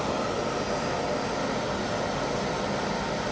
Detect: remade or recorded recorded